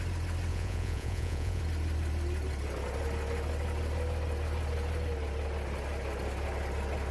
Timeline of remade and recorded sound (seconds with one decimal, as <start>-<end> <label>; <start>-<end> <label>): 0.0-0.5 recorded; 0.5-1.6 remade; 1.6-7.1 recorded